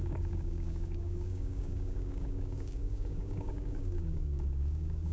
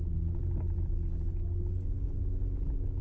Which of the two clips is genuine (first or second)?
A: second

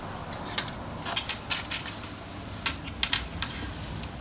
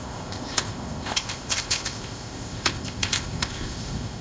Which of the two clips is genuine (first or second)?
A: first